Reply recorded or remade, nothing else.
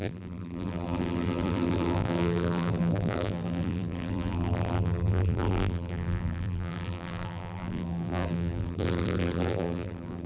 remade